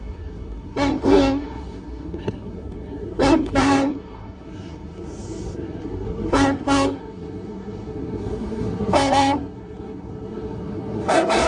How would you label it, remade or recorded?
remade